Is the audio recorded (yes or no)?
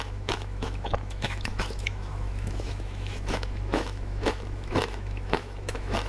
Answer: no